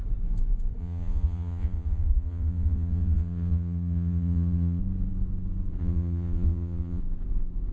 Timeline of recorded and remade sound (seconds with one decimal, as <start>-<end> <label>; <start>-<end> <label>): 0.0-0.8 recorded; 0.8-4.8 remade; 4.8-5.8 recorded; 5.8-7.0 remade; 7.0-7.7 recorded